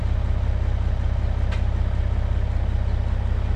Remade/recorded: recorded